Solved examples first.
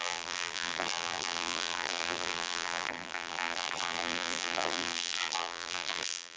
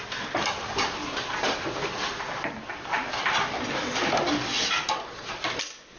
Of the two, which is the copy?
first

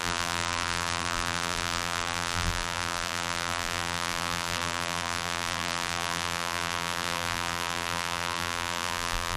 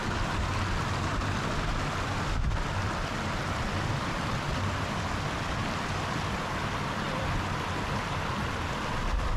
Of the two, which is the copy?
first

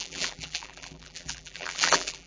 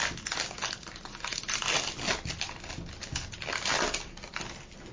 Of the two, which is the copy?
first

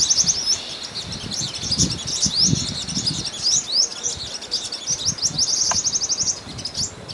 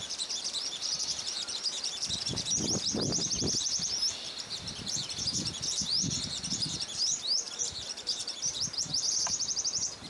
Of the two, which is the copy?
second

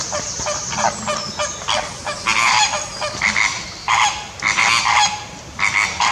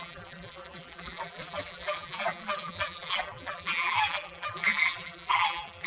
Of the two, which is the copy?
second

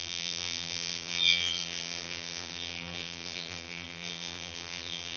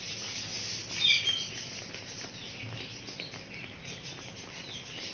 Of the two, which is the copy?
first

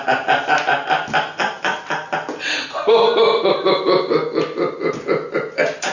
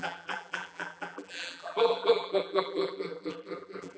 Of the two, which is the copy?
second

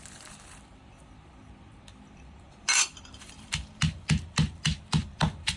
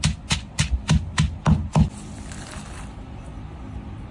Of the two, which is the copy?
first